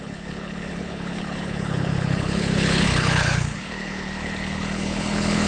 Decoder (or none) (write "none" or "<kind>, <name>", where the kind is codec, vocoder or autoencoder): codec, HILCodec